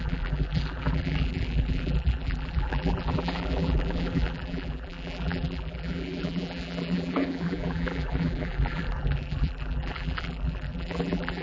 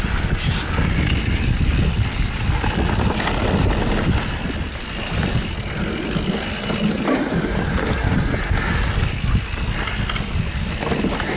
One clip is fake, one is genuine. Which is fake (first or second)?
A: first